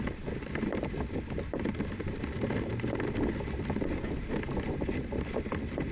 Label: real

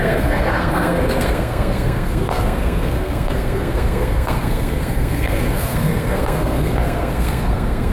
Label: fake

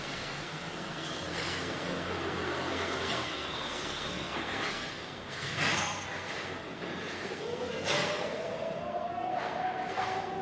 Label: fake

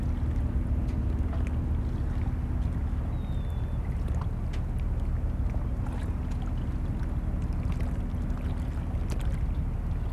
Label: real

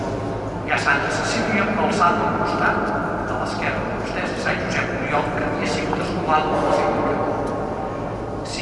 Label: real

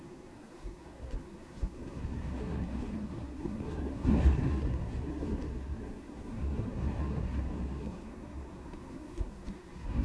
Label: fake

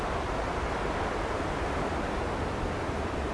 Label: real